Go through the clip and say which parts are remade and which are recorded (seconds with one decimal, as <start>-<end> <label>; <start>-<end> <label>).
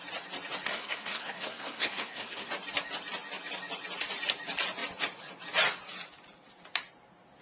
0.0-0.7 recorded; 0.7-2.5 remade; 2.5-7.4 recorded